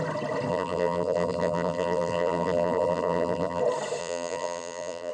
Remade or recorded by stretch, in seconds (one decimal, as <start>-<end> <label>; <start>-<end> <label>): 0.0-0.5 recorded; 0.5-3.6 remade; 3.6-4.0 recorded; 4.0-5.1 remade